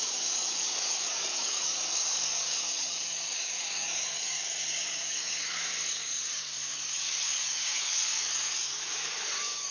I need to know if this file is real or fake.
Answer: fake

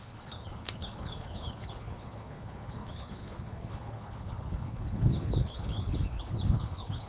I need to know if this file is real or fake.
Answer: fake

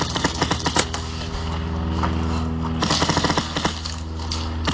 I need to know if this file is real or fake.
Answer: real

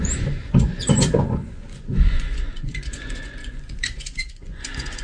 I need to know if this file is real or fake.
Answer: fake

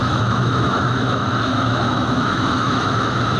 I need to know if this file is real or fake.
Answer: fake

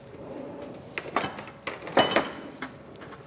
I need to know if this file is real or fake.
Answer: real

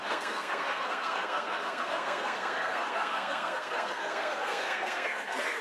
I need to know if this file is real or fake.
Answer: fake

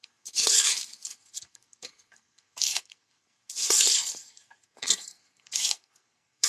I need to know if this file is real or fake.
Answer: fake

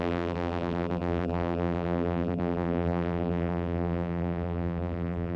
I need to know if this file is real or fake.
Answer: fake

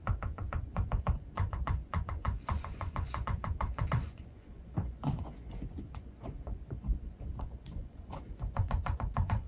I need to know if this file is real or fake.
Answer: fake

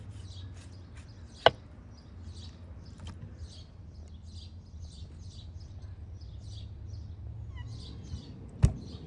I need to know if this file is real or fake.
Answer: real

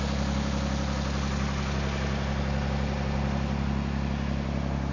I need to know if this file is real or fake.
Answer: real